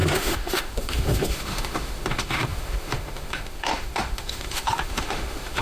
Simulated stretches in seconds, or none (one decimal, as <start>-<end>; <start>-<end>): 0.0-5.6